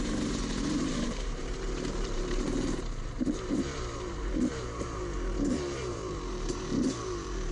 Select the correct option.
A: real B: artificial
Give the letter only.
B